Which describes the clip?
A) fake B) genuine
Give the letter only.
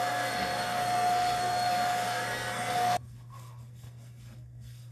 A